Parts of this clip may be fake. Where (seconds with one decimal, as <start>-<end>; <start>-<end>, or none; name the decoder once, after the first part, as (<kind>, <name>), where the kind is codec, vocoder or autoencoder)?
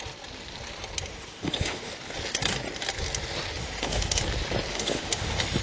1.1-1.9 (autoencoder, DAC-VAE); 3.6-4.2; 4.7-5.6